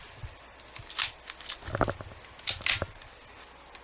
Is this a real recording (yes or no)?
yes